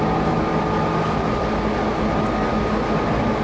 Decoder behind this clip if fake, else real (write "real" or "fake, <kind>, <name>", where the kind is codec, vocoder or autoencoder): real